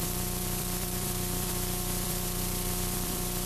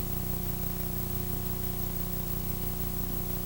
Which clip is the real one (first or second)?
second